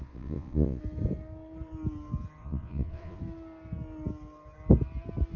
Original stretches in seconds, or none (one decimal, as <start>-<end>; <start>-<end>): 0.8-2.4; 3.2-5.4